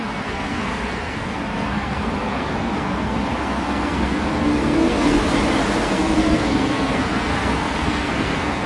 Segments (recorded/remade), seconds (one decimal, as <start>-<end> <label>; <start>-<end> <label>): 0.0-5.2 remade; 5.2-5.8 recorded; 5.8-8.7 remade